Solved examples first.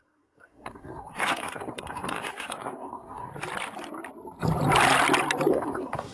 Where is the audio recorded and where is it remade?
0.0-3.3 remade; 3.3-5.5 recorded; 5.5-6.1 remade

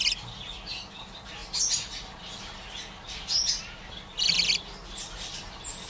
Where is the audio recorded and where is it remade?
0.0-5.9 recorded

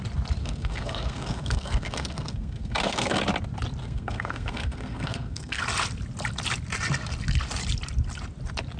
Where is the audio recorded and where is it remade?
0.0-0.4 recorded; 0.4-3.2 remade; 3.2-3.8 recorded; 3.8-5.6 remade; 5.6-8.8 recorded

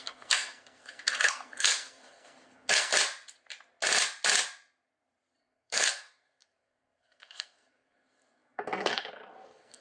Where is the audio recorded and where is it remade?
0.0-2.9 remade; 2.9-5.4 recorded; 5.4-9.8 remade

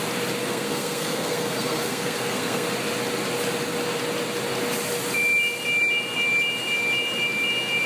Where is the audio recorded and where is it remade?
0.0-0.4 recorded; 0.4-2.7 remade; 2.7-7.9 recorded

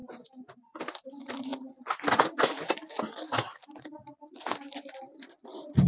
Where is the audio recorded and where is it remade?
0.0-5.9 recorded